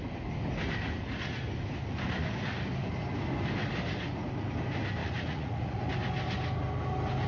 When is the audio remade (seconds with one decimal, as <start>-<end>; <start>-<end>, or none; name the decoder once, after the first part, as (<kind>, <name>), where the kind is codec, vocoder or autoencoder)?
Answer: 5.0-5.8 (vocoder, Vocos)